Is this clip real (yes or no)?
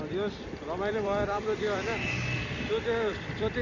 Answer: no